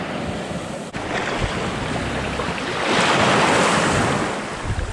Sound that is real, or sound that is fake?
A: real